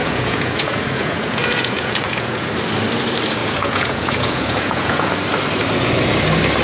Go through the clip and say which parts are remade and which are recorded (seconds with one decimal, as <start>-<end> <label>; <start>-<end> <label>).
0.0-2.5 remade; 2.5-3.4 recorded; 3.4-5.1 remade; 5.1-6.6 recorded